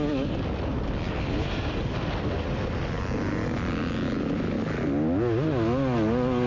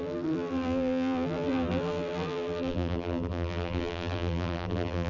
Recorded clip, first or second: first